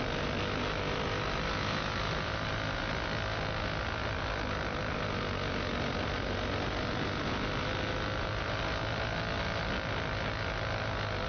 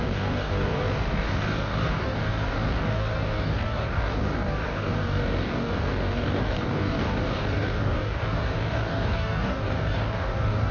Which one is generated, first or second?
second